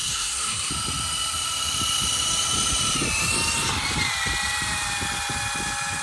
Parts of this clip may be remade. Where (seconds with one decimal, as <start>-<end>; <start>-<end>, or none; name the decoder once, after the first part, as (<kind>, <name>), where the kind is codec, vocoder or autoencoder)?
0.0-0.7 (codec, SNAC)